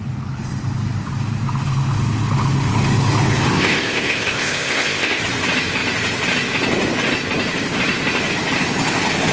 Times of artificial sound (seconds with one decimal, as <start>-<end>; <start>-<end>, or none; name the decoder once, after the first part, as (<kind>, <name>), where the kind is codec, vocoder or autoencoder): 3.5-5.2 (codec, ZipCodec)